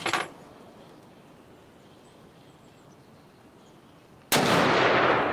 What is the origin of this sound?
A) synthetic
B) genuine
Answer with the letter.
B